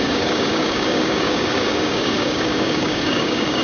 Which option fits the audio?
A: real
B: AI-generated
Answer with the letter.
B